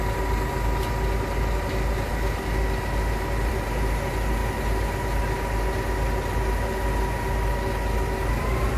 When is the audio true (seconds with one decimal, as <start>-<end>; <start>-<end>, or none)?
0.0-8.8